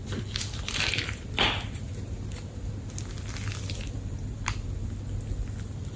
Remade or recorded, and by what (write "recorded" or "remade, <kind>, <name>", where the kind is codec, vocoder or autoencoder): recorded